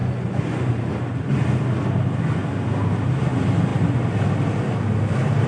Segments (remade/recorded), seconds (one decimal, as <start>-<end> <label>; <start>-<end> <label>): 0.0-0.7 remade; 0.7-5.5 recorded